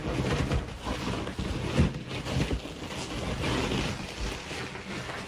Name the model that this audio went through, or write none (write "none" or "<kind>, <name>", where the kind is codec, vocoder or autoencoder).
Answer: none